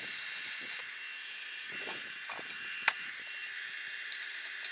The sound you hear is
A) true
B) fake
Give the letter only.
A